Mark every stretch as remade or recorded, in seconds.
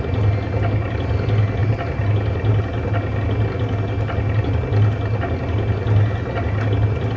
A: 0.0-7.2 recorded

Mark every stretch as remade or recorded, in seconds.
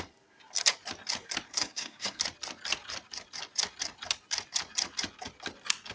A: 0.0-1.5 recorded; 1.5-2.2 remade; 2.2-5.9 recorded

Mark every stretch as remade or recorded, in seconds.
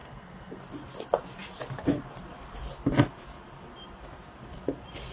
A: 0.0-0.6 remade; 0.6-5.1 recorded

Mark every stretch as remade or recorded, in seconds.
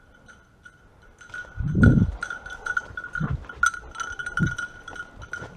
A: 0.0-1.9 recorded; 1.9-2.7 remade; 2.7-4.2 recorded; 4.2-4.9 remade; 4.9-5.6 recorded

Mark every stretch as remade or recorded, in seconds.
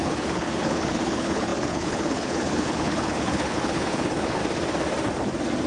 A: 0.0-4.4 remade; 4.4-5.7 recorded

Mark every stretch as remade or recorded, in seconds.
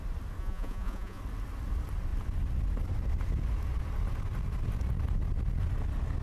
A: 0.0-0.4 recorded; 0.4-1.2 remade; 1.2-6.2 recorded